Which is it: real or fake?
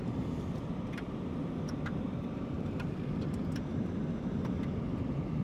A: fake